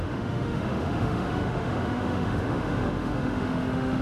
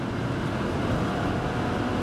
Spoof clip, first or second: first